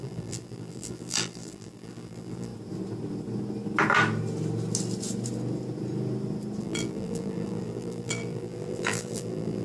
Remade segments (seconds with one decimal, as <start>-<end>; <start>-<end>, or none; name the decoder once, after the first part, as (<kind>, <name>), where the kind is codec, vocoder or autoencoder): 0.0-2.5 (vocoder, BigVGAN v2); 6.6-9.6